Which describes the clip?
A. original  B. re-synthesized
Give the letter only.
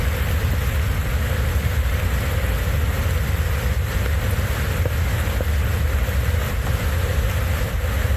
A